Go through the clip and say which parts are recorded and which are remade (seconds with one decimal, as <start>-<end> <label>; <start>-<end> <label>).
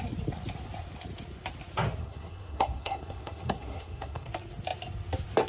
0.0-2.0 recorded; 2.0-4.3 remade; 4.3-5.5 recorded